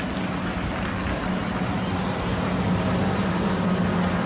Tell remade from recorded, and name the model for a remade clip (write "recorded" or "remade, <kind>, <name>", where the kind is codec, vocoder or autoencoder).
recorded